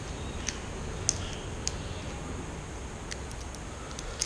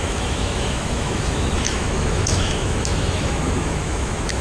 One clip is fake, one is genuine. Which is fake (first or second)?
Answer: second